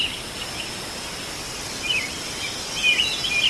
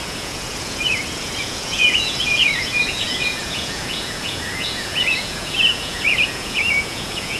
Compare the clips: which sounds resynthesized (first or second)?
second